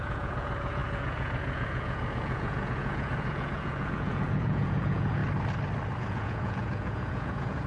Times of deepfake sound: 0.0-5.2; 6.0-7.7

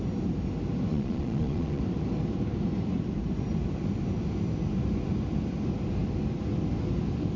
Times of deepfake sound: 0.9-1.8